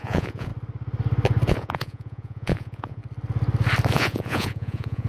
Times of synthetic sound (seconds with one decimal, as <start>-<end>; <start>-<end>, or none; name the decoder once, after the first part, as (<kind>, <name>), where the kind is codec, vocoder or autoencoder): 0.0-0.5 (vocoder, Vocos); 1.5-3.0; 3.9-5.1